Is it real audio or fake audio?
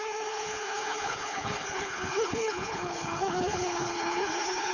fake